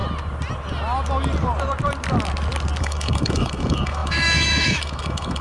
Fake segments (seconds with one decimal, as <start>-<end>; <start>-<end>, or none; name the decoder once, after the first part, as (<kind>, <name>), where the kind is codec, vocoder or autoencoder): 2.8-5.4 (autoencoder, DAC-VAE)